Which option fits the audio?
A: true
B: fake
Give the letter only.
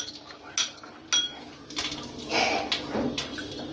A